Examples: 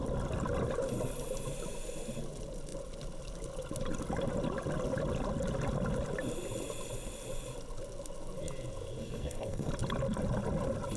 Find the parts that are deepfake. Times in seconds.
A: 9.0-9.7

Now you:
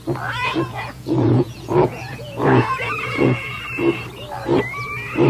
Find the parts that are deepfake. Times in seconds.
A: 0.4-3.6

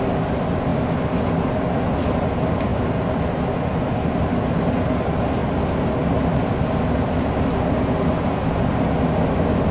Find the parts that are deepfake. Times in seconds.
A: none

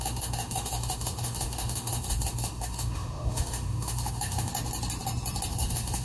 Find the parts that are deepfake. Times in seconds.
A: 0.0-4.5; 5.5-6.0

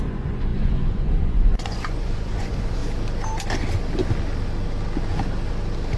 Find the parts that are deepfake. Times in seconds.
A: 0.0-2.8